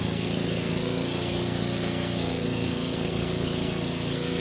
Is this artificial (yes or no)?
yes